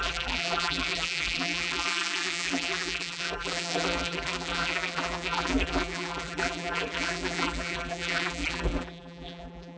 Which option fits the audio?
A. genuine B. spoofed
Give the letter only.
B